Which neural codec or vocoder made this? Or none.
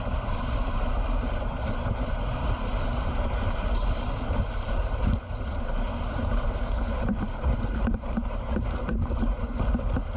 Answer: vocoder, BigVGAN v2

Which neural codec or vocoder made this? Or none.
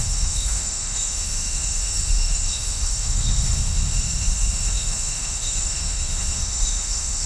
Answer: autoencoder, DAC-VAE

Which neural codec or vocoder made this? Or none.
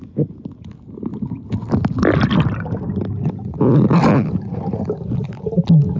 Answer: none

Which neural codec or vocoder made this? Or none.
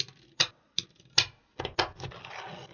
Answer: none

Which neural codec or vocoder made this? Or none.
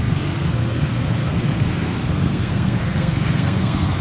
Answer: codec, SNAC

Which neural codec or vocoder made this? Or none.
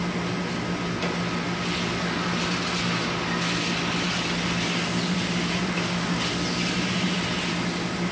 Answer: none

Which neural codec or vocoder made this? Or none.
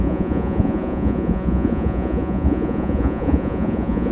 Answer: vocoder, Vocos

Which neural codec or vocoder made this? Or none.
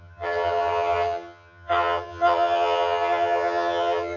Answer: vocoder, HiFi-GAN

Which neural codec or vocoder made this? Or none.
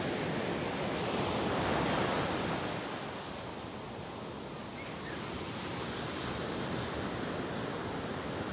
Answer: none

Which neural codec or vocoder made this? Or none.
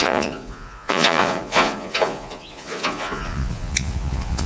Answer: vocoder, Vocos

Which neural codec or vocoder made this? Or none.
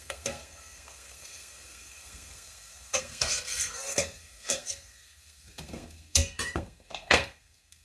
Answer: codec, SNAC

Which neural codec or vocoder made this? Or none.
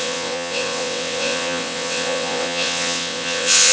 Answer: vocoder, WaveNeXt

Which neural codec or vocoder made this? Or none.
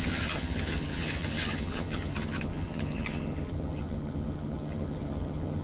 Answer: vocoder, HiFi-GAN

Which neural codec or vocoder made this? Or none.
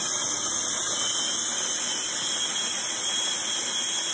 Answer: none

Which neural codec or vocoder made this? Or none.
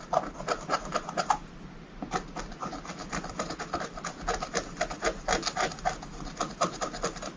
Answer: none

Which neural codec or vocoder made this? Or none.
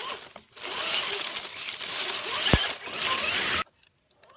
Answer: none